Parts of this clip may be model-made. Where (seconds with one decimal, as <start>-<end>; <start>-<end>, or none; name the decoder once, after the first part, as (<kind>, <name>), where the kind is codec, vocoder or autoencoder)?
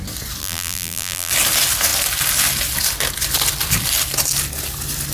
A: 0.4-1.3 (vocoder, BigVGAN v2)